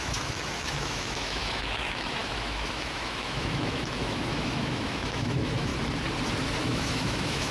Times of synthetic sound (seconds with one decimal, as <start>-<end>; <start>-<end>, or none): 0.0-5.7; 6.6-7.5

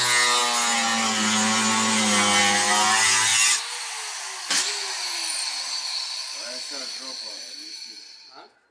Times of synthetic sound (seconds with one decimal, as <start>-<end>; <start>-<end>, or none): 7.3-8.0

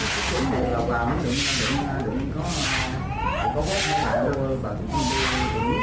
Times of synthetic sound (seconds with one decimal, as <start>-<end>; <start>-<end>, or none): none

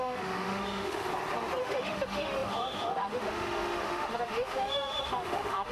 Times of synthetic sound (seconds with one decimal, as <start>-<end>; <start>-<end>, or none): 0.0-1.1; 1.6-5.7

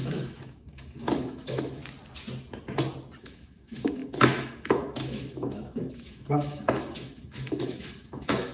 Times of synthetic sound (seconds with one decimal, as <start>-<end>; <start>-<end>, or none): 0.0-1.8; 3.2-8.5